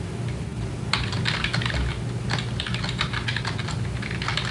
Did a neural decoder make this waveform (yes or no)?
no